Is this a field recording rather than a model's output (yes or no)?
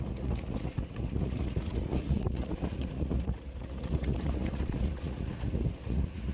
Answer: no